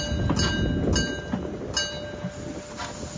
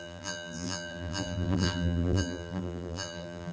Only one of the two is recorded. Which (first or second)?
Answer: first